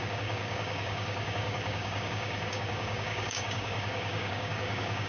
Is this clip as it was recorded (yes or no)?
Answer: no